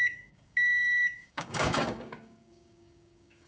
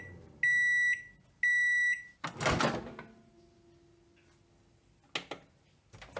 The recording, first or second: second